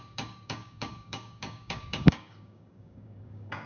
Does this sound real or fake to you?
fake